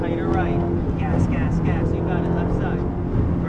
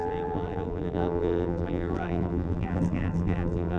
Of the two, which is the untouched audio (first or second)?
first